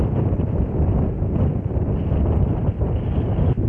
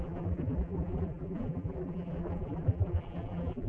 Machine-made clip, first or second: second